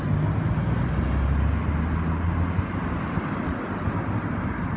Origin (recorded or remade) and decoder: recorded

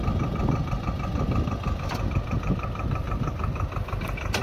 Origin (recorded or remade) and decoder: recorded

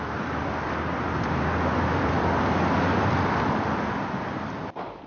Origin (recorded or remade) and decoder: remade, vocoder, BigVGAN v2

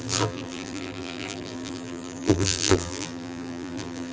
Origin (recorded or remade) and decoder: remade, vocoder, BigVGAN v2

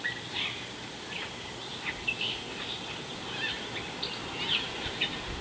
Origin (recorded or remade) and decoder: recorded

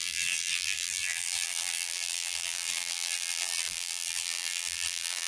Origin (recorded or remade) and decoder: remade, vocoder, BigVGAN v2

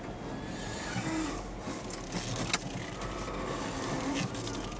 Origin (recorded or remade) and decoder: recorded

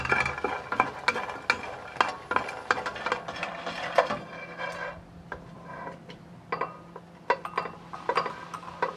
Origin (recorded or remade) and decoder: recorded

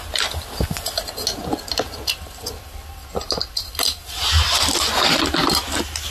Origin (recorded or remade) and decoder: recorded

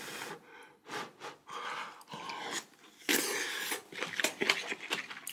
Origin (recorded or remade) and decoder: recorded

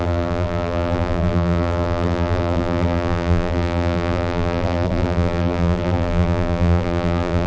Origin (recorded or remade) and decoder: remade, vocoder, BigVGAN v2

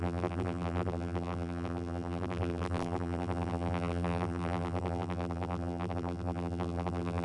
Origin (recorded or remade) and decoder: remade, vocoder, BigVGAN v2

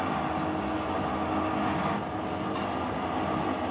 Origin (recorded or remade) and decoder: recorded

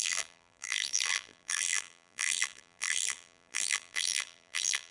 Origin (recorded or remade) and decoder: remade, vocoder, BigVGAN v2